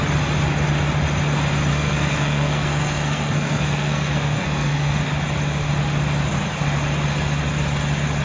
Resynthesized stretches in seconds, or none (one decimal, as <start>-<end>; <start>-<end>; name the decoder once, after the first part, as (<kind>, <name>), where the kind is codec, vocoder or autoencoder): 1.7-5.0 (codec, SNAC)